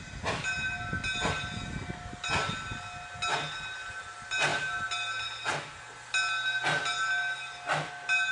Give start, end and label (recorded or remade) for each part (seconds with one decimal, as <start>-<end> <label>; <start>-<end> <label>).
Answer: 0.0-8.3 recorded